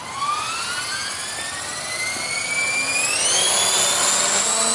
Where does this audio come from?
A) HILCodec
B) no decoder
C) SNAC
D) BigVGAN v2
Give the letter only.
B